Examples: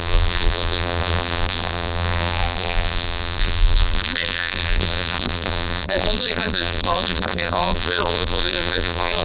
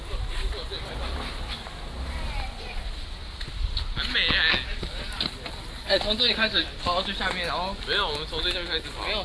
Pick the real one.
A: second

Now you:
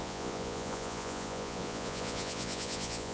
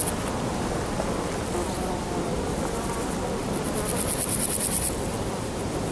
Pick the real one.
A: second